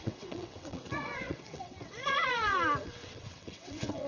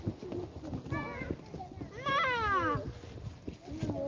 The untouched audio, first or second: second